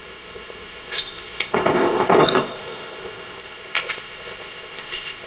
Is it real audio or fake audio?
fake